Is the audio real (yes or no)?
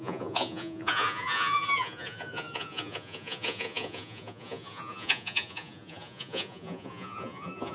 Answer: no